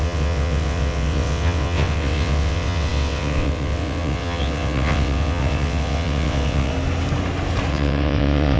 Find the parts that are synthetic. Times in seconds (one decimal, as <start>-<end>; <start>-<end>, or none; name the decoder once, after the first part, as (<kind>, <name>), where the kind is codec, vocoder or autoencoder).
0.0-6.7 (vocoder, WaveNeXt); 7.7-8.6